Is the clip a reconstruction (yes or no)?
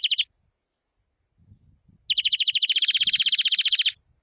no